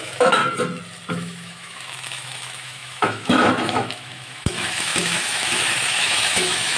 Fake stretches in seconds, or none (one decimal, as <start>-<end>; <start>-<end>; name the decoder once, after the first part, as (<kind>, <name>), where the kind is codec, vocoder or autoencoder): 0.0-0.4 (autoencoder, DAC-VAE); 1.1-6.8